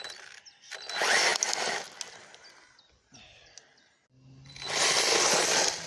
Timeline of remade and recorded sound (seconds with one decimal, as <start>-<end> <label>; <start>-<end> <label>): 0.0-5.9 recorded